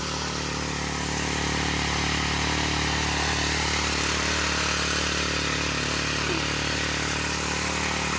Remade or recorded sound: recorded